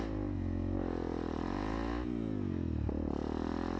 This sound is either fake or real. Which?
real